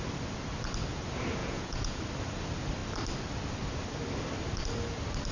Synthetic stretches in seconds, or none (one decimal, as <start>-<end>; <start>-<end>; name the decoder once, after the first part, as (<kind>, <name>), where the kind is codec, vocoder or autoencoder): 1.4-2.0 (vocoder, Vocos)